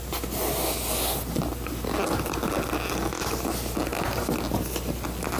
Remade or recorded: recorded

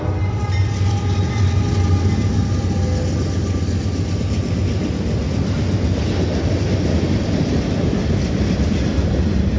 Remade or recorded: recorded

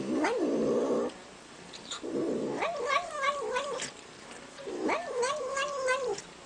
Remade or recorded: recorded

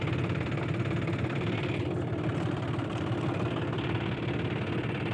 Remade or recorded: remade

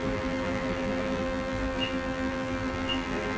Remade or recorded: remade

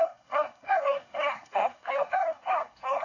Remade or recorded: remade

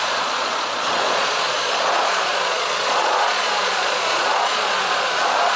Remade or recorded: remade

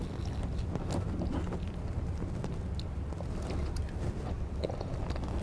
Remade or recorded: recorded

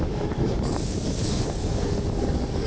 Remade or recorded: remade